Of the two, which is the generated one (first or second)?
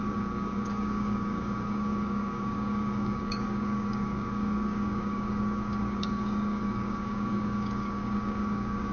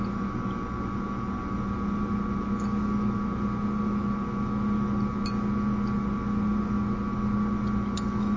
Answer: first